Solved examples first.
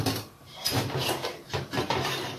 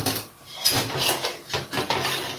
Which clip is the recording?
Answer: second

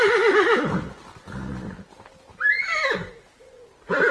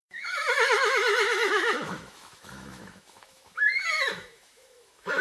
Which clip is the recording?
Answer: first